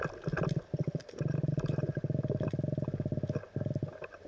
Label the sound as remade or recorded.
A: recorded